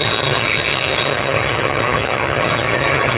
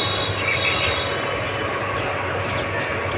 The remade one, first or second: first